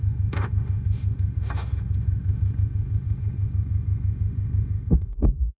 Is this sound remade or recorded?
remade